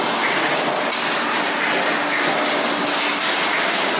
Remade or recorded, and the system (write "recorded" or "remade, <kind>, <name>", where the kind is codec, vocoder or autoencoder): recorded